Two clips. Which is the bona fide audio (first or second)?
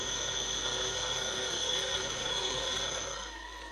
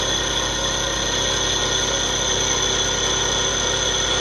second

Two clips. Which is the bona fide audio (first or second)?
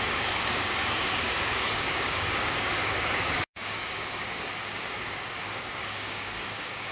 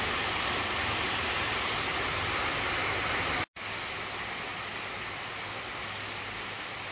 second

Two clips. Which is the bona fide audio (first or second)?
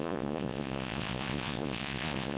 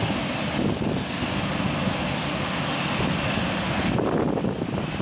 second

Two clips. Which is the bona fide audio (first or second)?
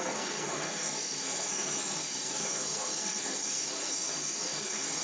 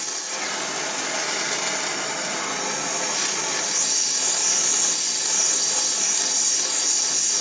second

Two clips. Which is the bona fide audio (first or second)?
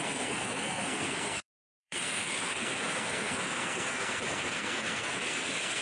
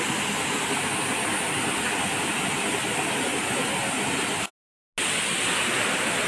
second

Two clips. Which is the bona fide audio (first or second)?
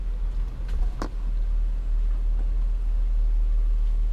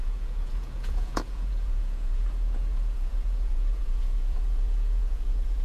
first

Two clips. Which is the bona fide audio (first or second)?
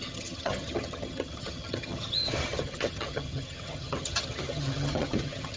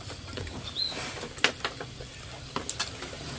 second